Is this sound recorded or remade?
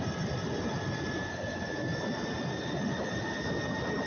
recorded